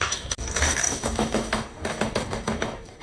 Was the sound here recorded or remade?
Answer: remade